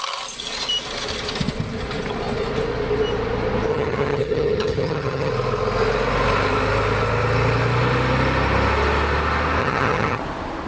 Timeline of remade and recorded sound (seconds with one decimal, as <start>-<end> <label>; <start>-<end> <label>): 0.0-3.7 recorded; 3.7-5.3 remade; 5.3-9.6 recorded; 9.6-10.2 remade; 10.2-10.7 recorded